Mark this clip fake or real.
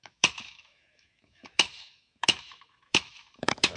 fake